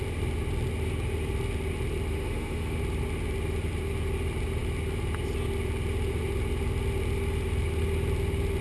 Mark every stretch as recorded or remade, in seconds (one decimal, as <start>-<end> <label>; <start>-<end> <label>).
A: 0.0-2.1 recorded; 2.1-2.8 remade; 2.8-8.6 recorded